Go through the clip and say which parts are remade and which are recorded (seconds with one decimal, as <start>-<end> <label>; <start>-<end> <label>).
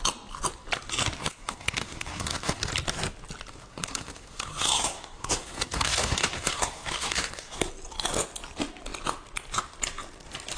0.0-1.2 recorded; 1.2-2.7 remade; 2.7-3.7 recorded; 3.7-7.7 remade; 7.7-10.6 recorded